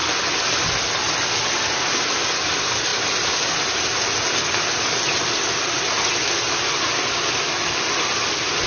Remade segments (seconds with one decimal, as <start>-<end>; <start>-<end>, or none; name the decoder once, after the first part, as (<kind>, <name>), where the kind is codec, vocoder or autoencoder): none